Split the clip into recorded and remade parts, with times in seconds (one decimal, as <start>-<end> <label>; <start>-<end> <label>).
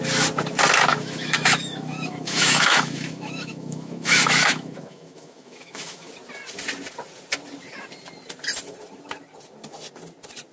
0.0-0.9 recorded; 0.9-6.1 remade; 6.1-10.5 recorded